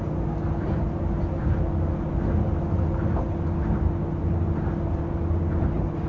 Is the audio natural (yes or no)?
yes